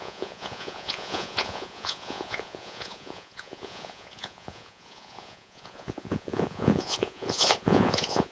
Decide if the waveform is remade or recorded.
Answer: remade